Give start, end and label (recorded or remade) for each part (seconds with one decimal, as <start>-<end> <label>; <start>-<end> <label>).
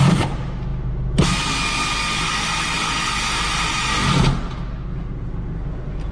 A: 0.0-6.1 recorded